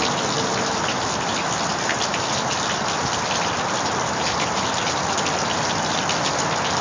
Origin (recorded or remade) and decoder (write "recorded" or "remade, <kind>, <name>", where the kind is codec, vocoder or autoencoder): recorded